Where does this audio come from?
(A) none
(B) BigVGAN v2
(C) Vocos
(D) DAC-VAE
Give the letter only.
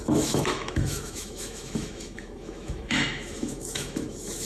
D